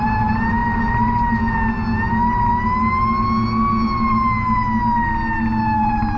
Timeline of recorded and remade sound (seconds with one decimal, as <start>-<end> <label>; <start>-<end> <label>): 0.0-6.2 recorded